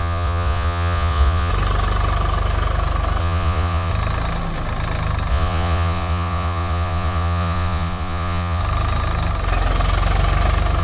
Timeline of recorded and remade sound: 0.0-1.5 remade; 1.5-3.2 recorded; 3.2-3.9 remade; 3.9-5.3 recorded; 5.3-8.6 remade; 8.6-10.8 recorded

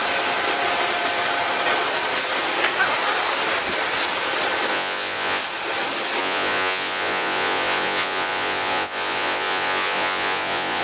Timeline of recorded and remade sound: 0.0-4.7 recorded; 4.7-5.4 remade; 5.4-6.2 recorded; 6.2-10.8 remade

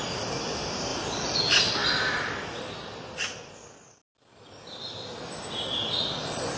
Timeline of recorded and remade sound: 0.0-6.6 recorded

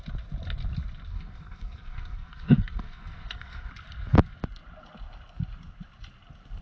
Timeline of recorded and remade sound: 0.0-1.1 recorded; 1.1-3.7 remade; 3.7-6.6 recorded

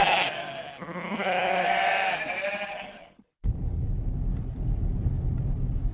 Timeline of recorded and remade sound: 0.0-2.7 recorded; 2.7-3.9 remade; 3.9-5.9 recorded

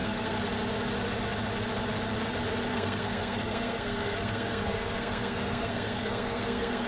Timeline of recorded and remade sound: 0.0-0.5 remade; 0.5-2.7 recorded; 2.7-6.9 remade

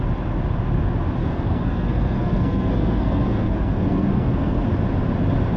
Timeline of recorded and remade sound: 0.0-1.2 recorded; 1.2-4.6 remade; 4.6-5.6 recorded

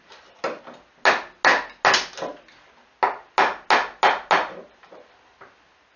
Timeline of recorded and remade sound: 0.0-6.0 recorded